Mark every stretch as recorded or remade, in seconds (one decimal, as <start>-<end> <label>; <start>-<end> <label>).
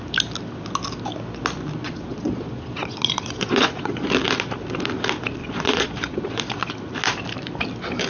0.0-1.8 recorded; 1.8-4.1 remade; 4.1-5.4 recorded; 5.4-6.7 remade; 6.7-8.1 recorded